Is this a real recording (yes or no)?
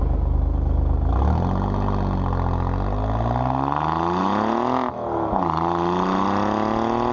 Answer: yes